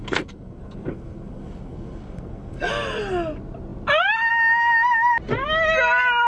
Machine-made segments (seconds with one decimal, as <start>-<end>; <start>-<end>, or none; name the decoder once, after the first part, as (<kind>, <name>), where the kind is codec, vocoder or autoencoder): 0.0-2.7 (codec, SNAC)